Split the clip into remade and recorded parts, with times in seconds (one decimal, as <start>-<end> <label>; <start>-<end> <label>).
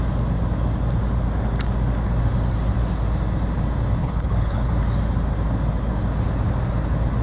0.0-4.0 recorded; 4.0-4.7 remade; 4.7-7.2 recorded